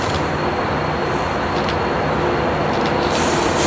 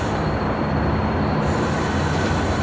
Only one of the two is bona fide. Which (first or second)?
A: first